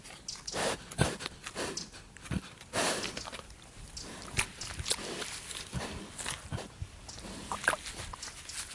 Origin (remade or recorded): recorded